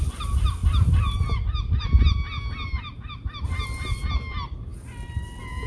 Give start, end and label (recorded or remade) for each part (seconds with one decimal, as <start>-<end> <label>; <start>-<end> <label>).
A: 0.0-5.7 recorded